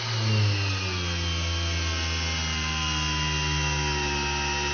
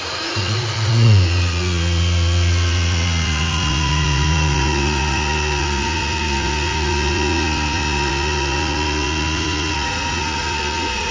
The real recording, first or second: first